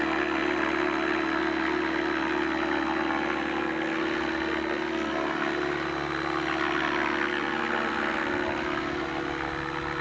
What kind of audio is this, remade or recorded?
recorded